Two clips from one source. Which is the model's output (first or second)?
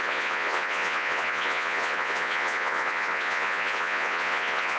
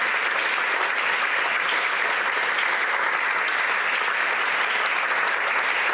first